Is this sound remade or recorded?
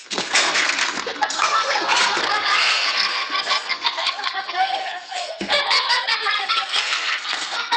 remade